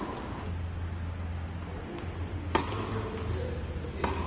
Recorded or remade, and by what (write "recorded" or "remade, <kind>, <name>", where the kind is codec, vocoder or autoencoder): recorded